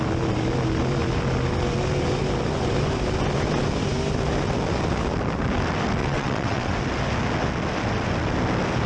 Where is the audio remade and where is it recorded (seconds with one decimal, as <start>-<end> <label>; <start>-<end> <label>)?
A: 0.0-6.0 recorded; 6.0-6.7 remade; 6.7-8.9 recorded